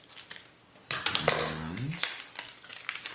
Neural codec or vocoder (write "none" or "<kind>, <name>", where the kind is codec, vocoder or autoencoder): none